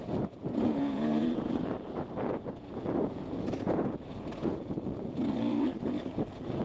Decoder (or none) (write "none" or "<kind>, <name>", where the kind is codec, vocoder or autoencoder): vocoder, Vocos